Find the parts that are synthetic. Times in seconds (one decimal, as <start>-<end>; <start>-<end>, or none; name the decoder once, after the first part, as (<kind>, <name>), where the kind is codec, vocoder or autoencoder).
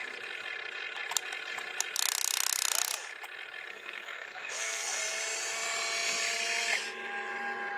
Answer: 3.7-5.0 (codec, SNAC)